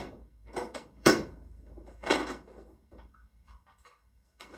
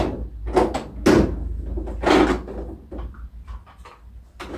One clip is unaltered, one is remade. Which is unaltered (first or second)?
second